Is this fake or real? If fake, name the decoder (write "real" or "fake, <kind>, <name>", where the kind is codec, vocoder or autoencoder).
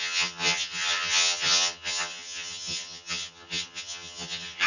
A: fake, vocoder, HiFi-GAN